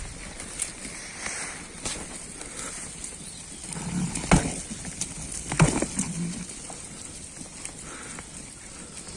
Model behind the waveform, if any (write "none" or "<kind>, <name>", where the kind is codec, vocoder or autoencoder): none